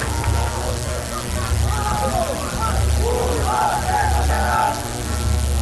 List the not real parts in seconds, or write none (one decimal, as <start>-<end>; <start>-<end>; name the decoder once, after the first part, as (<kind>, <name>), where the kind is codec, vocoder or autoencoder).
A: 0.0-1.2 (codec, SNAC); 4.3-5.6